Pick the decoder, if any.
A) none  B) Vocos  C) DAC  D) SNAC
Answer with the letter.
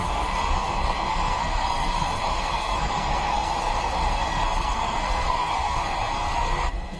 D